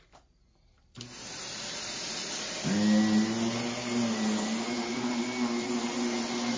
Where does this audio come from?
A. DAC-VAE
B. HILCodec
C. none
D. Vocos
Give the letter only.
C